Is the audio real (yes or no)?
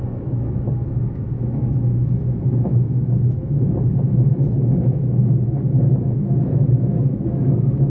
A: no